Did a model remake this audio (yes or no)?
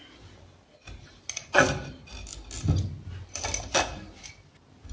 no